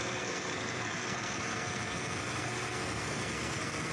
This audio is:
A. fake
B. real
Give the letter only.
A